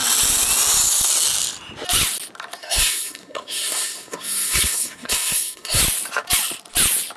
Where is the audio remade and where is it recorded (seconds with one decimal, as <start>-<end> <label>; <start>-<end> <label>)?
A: 0.0-2.6 recorded; 2.6-5.8 remade; 5.8-7.2 recorded